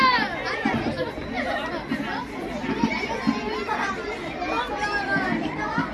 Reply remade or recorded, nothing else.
recorded